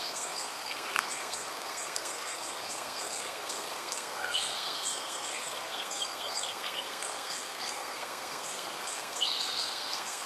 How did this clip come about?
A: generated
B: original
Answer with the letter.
A